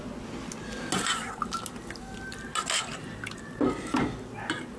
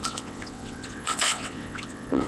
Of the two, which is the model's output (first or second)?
second